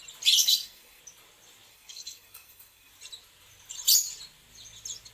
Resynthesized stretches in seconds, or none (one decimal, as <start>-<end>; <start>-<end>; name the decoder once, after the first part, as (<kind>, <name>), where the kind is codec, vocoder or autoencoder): 0.4-1.0 (codec, SNAC); 1.7-2.9

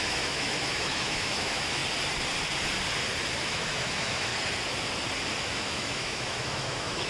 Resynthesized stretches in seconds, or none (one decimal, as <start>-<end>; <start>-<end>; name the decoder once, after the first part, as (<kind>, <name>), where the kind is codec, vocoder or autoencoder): 0.0-1.8 (autoencoder, DAC-VAE); 3.4-4.3; 5.4-7.1

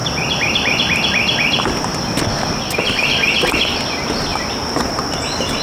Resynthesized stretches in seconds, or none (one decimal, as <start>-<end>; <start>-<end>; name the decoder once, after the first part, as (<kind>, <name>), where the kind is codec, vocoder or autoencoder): 4.3-5.6 (vocoder, BigVGAN v2)

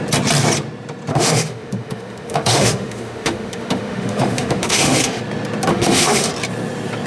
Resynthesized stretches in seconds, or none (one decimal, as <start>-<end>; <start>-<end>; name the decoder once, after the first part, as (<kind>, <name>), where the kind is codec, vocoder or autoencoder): 1.1-5.2 (autoencoder, DAC-VAE); 5.7-6.3